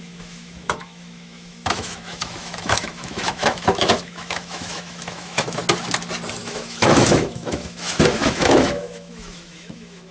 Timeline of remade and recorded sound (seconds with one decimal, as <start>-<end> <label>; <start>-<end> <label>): 0.0-5.6 remade; 5.6-6.4 recorded; 6.4-10.1 remade